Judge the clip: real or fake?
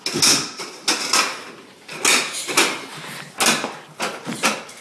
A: real